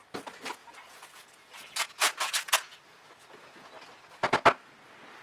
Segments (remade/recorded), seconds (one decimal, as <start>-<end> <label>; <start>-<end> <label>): 0.0-0.6 recorded; 0.6-3.7 remade; 3.7-5.2 recorded